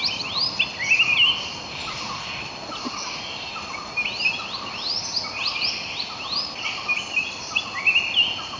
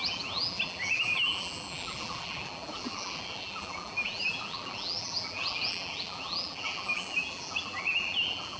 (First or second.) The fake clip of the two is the second